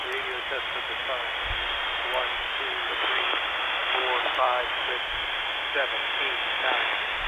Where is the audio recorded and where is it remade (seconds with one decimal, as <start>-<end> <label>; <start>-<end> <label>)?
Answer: 0.0-7.3 recorded